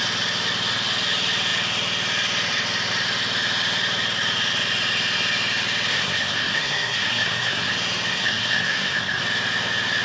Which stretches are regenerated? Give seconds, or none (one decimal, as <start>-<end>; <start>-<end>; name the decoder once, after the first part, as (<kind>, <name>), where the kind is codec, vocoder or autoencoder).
5.9-7.7 (codec, SNAC); 8.1-9.2

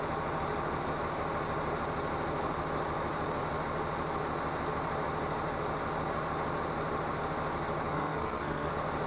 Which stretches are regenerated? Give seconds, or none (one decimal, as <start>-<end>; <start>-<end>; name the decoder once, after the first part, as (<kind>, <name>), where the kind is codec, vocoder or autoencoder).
7.9-8.7 (codec, SNAC)

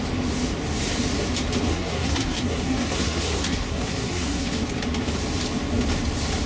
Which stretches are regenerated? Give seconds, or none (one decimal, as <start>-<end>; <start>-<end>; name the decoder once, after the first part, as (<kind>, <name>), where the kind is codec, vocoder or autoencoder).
1.7-4.5 (codec, SNAC)

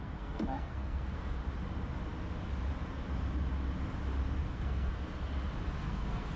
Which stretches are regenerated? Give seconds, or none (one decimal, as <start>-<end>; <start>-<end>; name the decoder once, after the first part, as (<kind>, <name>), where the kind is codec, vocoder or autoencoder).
0.0-1.4 (codec, SNAC); 4.4-4.9; 5.8-6.4

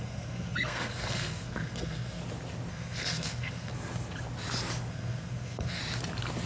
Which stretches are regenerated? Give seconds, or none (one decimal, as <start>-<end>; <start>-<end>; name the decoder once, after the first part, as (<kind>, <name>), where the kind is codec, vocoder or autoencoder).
0.0-2.2 (codec, SNAC); 2.7-3.7; 4.9-5.8